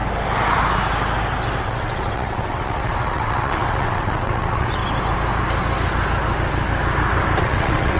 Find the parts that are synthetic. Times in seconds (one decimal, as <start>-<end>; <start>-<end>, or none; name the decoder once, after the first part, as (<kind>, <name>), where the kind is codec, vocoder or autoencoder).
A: 1.6-4.8 (vocoder, WaveNeXt); 7.4-8.0